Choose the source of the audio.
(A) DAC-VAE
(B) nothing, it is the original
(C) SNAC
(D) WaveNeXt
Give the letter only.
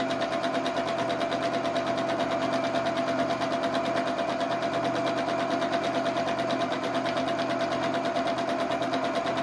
B